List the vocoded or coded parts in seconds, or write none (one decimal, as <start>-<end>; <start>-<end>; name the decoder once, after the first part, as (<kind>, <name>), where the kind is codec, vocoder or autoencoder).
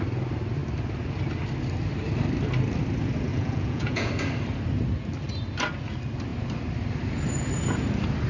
3.3-4.1 (vocoder, Vocos)